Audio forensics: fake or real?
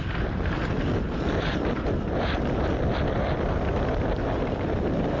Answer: fake